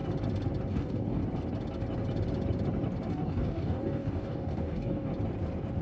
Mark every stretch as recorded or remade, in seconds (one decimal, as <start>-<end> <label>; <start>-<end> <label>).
0.0-0.7 recorded; 0.7-1.2 remade; 1.2-3.1 recorded; 3.1-5.1 remade; 5.1-5.8 recorded